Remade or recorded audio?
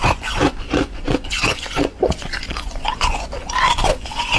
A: remade